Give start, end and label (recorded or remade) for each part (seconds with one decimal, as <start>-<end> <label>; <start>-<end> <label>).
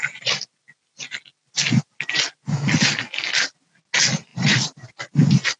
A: 0.0-1.6 recorded; 1.6-2.3 remade; 2.3-4.3 recorded; 4.3-4.9 remade; 4.9-5.6 recorded